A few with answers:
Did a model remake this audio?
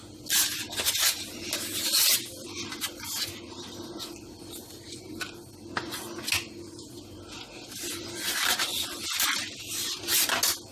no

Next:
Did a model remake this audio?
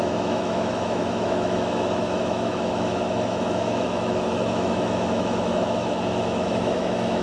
yes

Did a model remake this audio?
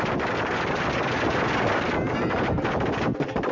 no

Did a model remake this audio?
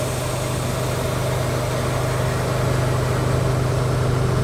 no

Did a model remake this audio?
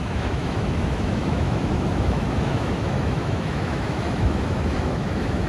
yes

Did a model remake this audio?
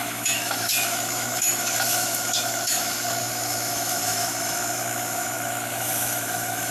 yes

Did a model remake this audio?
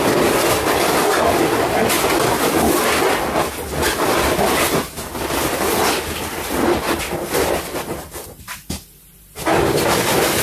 no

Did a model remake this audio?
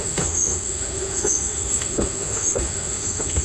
yes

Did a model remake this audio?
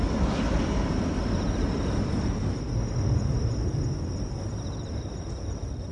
no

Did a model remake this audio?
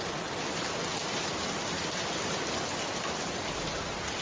no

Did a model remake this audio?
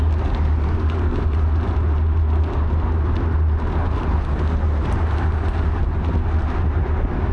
no